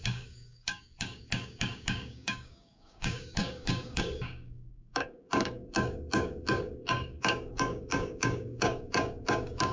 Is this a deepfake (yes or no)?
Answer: yes